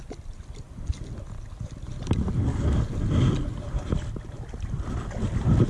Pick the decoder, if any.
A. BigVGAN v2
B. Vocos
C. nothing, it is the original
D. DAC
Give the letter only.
C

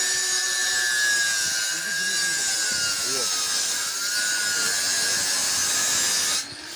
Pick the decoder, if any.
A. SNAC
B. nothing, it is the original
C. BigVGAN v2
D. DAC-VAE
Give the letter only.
B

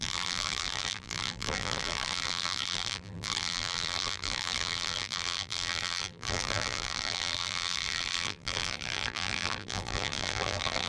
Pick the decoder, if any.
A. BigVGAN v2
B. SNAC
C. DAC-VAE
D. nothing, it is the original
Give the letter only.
A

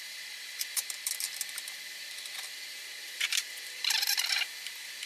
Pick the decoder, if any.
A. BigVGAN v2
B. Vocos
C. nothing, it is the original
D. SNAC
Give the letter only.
A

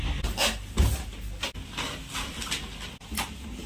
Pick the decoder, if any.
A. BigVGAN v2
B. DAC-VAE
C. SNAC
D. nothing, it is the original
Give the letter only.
D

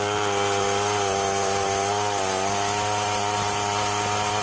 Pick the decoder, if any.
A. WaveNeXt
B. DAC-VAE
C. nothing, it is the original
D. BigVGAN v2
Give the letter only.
C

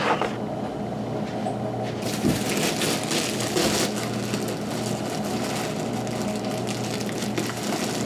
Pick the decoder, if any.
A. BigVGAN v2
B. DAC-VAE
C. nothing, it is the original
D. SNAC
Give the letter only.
C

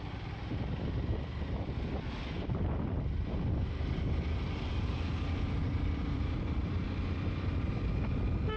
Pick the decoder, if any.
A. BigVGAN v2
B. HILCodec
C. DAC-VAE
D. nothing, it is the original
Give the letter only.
D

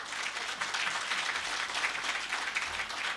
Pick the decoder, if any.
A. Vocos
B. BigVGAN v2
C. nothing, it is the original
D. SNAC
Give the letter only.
C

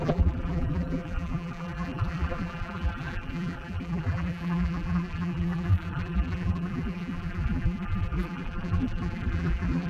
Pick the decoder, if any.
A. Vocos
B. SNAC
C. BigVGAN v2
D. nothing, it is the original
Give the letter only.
C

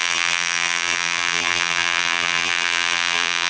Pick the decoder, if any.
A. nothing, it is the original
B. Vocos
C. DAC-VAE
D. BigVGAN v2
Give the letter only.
D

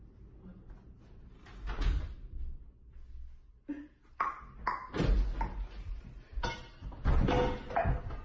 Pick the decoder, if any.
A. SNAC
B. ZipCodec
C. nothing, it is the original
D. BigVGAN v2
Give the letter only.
C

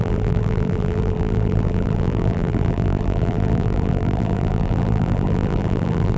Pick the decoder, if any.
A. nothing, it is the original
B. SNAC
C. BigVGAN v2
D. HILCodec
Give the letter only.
C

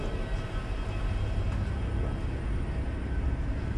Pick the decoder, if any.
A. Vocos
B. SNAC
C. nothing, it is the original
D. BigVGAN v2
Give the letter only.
C